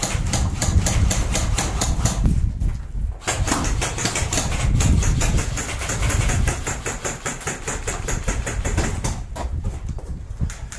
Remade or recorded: recorded